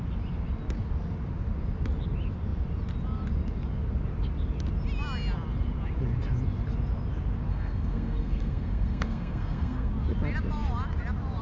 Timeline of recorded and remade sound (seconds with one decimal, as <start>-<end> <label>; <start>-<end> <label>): 0.0-7.5 recorded; 7.5-9.9 remade; 9.9-11.4 recorded